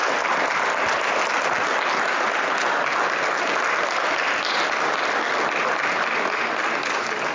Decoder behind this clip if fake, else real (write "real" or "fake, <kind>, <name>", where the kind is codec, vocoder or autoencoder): real